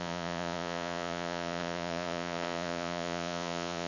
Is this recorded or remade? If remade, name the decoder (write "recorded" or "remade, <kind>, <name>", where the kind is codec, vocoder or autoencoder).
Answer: remade, vocoder, Vocos